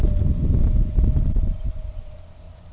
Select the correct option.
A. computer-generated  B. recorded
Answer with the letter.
B